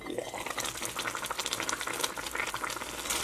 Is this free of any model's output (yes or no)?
yes